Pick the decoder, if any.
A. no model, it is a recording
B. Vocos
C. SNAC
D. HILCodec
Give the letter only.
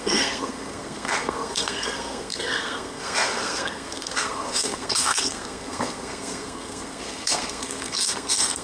C